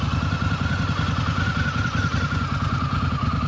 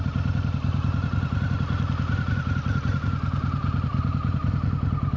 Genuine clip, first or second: second